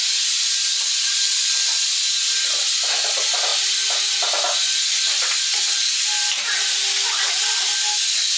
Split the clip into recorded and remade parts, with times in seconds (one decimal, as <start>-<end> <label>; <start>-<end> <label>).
0.0-8.4 recorded